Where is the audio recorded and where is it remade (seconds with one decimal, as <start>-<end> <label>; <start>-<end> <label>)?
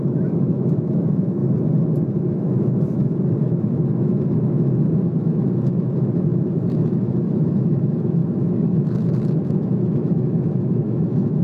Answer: 0.0-1.4 remade; 1.4-2.1 recorded; 2.1-11.4 remade